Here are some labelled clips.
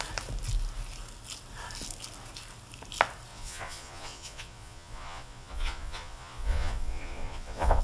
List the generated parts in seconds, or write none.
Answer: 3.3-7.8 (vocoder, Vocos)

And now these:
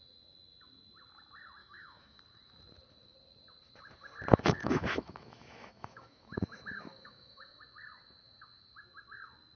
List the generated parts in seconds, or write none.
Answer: 1.6-2.2 (autoencoder, DAC-VAE); 4.3-7.6